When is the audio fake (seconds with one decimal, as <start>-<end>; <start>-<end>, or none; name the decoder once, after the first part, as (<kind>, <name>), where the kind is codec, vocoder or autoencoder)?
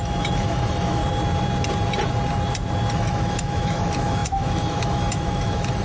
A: 0.0-1.0 (autoencoder, DAC-VAE); 2.9-5.8